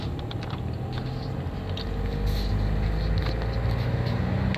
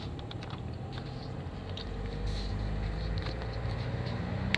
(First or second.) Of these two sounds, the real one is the first